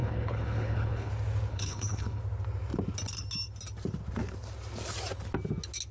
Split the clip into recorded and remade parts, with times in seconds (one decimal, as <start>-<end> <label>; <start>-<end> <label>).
0.0-1.1 remade; 1.1-1.5 recorded; 1.5-2.2 remade; 2.2-5.9 recorded